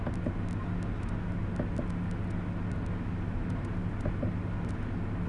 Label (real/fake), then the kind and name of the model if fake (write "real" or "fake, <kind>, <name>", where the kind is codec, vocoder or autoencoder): real